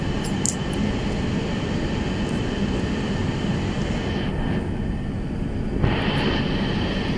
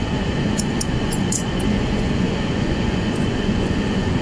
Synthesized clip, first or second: second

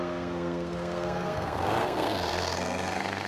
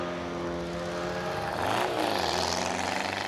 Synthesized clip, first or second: first